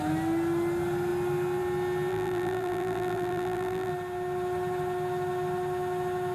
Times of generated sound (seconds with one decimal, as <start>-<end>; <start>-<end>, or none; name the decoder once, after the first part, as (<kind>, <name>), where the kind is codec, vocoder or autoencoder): 2.1-3.9 (vocoder, BigVGAN v2)